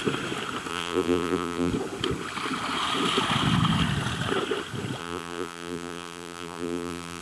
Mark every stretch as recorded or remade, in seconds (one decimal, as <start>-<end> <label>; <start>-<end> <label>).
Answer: 0.0-0.7 recorded; 0.7-1.7 remade; 1.7-5.0 recorded; 5.0-7.2 remade